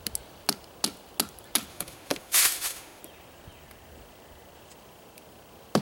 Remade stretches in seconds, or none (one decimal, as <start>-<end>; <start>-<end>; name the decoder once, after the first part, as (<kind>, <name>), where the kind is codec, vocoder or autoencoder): 1.7-3.0 (autoencoder, DAC-VAE)